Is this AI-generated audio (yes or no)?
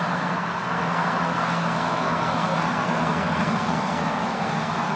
yes